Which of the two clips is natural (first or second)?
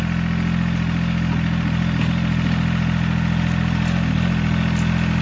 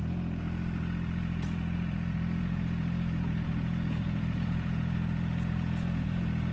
first